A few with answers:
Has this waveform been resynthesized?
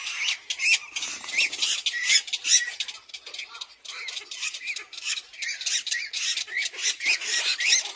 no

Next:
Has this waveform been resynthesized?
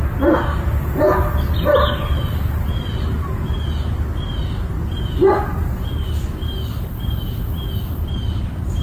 no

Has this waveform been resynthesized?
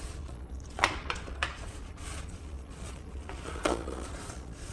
yes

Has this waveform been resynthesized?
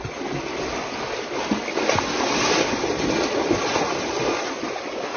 no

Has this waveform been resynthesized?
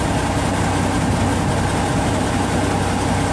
no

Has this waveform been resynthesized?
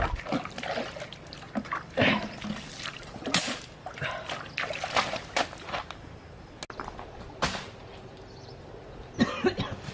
no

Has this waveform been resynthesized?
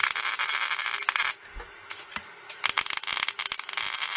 no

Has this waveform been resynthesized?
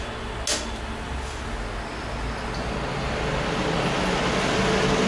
no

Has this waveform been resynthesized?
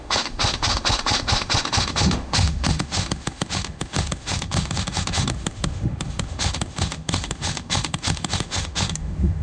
yes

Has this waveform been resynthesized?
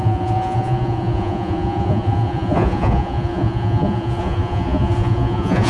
yes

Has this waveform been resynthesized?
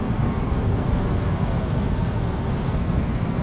yes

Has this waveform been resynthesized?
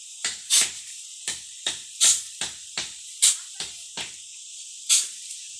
yes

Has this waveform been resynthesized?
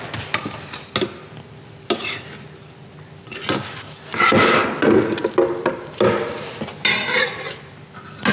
no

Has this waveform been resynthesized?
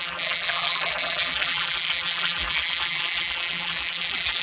yes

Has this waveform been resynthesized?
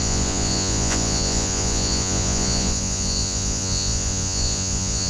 yes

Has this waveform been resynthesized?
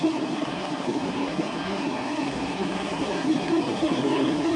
yes